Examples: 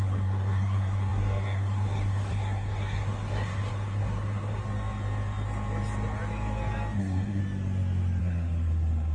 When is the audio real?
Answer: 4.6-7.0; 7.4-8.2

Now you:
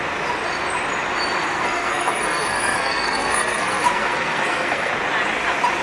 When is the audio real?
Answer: 0.0-1.4; 4.9-5.8

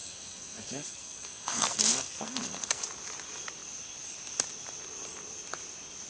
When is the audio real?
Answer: 2.8-6.1

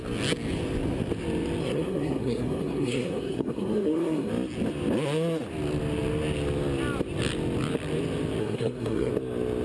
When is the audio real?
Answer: 0.0-1.6; 4.3-8.4; 9.1-9.6